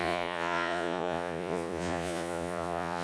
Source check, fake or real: fake